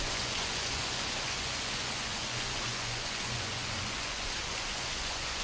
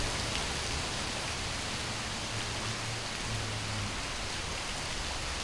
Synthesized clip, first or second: first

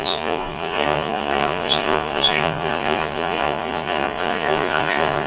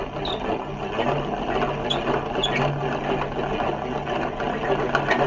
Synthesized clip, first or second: first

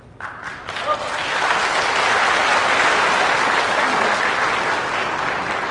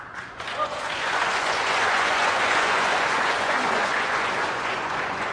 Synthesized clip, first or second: second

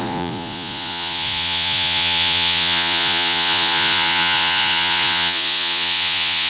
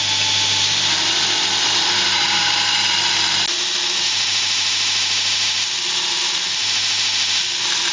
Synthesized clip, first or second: first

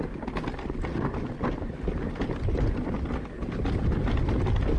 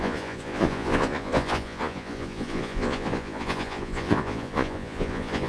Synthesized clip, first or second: second